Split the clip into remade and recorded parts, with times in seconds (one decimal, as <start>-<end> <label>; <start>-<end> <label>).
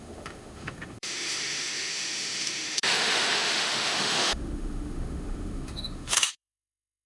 0.0-7.1 remade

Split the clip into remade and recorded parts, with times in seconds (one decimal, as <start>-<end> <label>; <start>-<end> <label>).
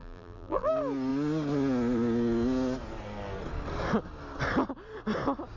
0.0-0.7 remade; 0.7-5.6 recorded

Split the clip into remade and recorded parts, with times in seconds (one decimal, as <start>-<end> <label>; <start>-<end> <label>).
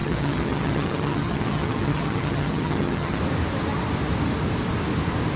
0.0-3.2 remade; 3.2-5.4 recorded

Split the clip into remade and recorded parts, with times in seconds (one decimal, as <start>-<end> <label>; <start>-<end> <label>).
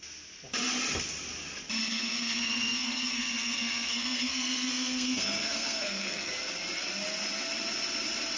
0.0-1.8 recorded; 1.8-6.3 remade; 6.3-8.4 recorded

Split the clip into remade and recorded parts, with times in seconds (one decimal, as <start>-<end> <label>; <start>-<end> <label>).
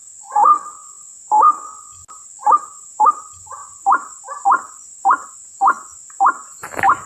0.0-0.7 remade; 0.7-3.6 recorded; 3.6-5.3 remade; 5.3-7.1 recorded